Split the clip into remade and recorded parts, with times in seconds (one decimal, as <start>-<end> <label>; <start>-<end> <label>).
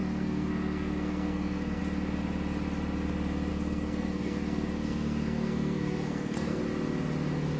0.0-1.8 remade; 1.8-3.5 recorded; 3.5-6.6 remade; 6.6-7.6 recorded